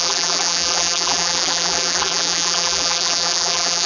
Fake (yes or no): yes